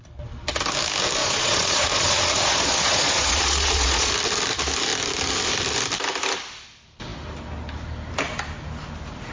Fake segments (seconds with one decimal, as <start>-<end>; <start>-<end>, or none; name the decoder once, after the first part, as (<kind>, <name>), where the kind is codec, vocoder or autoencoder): 1.2-4.1 (vocoder, Vocos)